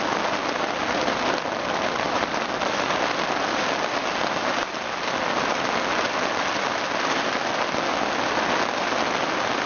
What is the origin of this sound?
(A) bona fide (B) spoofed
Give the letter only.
A